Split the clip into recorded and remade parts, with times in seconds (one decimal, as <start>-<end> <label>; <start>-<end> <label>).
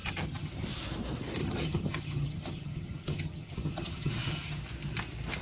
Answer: 0.0-0.5 remade; 0.5-1.4 recorded; 1.4-4.6 remade; 4.6-5.4 recorded